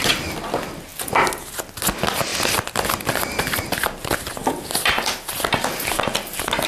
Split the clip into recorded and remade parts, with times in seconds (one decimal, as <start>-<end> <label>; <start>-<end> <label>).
0.0-6.7 recorded